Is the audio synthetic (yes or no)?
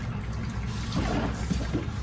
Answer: no